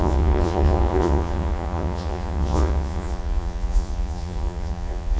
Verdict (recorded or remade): remade